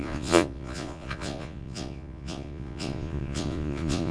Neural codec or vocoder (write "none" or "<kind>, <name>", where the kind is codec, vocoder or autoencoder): vocoder, Vocos